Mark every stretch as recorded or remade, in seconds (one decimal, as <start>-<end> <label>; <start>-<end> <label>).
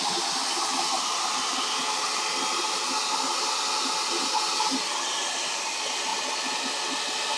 0.0-7.4 recorded